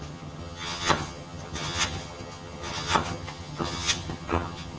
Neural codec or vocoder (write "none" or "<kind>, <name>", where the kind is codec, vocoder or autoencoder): vocoder, HiFi-GAN